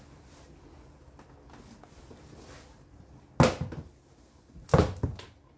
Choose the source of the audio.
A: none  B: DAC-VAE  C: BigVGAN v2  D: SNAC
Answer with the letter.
A